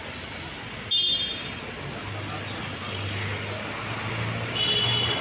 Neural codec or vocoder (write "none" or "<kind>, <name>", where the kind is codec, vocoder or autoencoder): none